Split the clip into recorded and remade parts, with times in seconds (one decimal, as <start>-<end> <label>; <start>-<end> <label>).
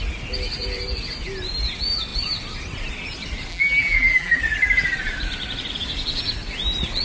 0.0-3.5 recorded; 3.5-4.4 remade; 4.4-7.0 recorded